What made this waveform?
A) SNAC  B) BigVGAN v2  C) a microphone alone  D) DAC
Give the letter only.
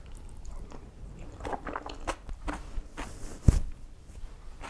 B